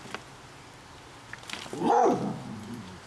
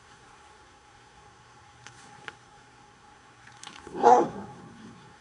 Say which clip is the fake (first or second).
second